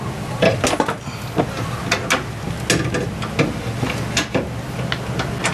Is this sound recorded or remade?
recorded